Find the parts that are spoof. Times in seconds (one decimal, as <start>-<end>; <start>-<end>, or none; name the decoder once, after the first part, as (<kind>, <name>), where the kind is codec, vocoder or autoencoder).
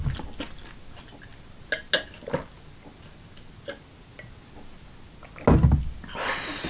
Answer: none